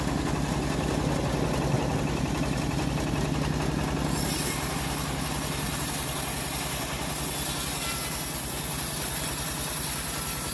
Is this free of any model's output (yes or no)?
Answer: yes